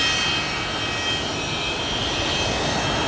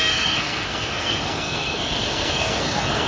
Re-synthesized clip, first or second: second